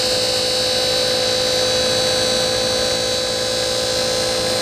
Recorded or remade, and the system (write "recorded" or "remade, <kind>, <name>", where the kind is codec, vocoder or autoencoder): recorded